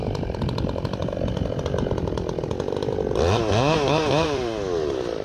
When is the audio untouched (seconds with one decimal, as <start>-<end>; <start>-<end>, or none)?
1.0-4.1